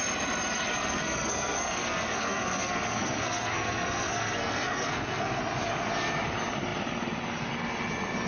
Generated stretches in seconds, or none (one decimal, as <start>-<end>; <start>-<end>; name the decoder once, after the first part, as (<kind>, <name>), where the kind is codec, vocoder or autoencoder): 0.7-5.4 (codec, SNAC)